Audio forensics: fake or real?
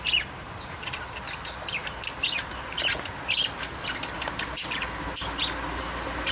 real